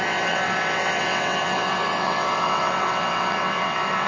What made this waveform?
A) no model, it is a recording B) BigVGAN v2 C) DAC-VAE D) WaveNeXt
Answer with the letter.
D